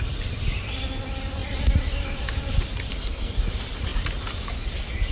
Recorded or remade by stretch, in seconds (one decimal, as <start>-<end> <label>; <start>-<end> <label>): 0.0-2.9 recorded; 2.9-3.4 remade; 3.4-5.1 recorded